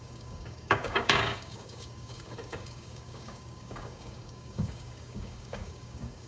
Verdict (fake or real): fake